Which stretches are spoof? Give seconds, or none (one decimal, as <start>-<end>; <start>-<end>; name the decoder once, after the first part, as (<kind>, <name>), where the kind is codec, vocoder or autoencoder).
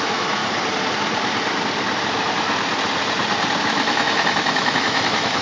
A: 0.0-0.4 (autoencoder, DAC-VAE); 3.6-5.4